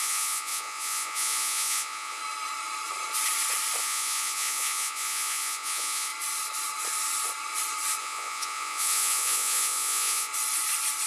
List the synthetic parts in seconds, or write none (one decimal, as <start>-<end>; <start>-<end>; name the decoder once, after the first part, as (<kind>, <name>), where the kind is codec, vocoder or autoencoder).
0.0-2.2 (vocoder, Vocos); 3.8-6.1; 8.0-10.3